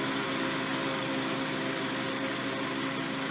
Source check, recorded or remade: recorded